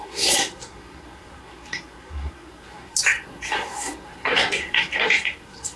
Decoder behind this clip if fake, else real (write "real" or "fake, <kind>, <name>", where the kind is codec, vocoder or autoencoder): fake, codec, SNAC